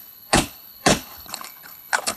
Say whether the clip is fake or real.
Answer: fake